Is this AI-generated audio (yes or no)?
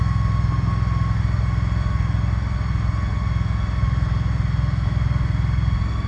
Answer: no